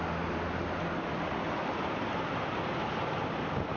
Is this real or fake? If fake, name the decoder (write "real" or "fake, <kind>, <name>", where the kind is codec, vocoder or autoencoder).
real